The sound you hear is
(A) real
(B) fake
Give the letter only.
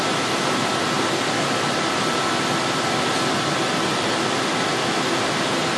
A